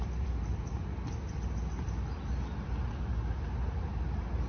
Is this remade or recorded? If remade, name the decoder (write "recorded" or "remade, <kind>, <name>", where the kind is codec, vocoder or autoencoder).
recorded